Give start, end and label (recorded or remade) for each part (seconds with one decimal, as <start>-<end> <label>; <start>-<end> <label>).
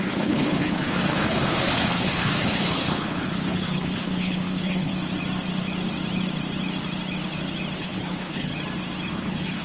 0.0-4.9 remade; 4.9-7.8 recorded; 7.8-8.5 remade; 8.5-9.1 recorded; 9.1-9.6 remade